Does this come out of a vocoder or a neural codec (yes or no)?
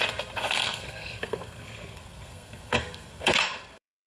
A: yes